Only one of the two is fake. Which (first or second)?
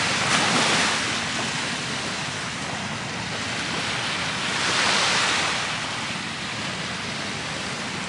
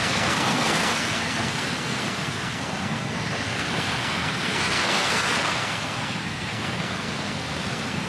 second